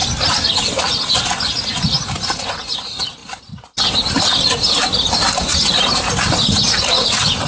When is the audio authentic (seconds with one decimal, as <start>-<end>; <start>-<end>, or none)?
0.0-7.5